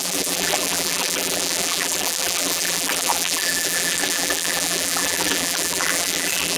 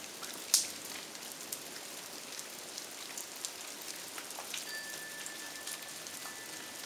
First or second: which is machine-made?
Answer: first